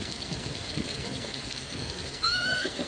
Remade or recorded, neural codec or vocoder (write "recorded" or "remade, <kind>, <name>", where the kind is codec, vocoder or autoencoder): remade, codec, SNAC